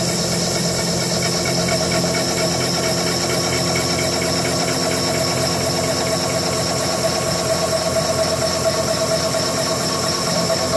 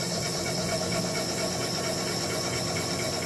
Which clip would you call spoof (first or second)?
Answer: second